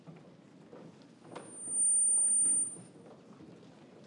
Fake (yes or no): no